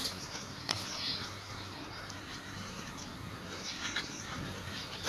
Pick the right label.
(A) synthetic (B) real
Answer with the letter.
A